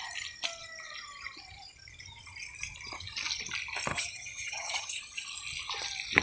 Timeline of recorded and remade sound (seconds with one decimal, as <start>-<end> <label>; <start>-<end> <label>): 0.0-3.9 recorded; 3.9-5.0 remade; 5.0-6.2 recorded

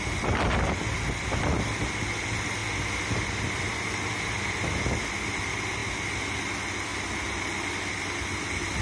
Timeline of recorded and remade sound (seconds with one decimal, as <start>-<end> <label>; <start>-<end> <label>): 0.0-8.8 recorded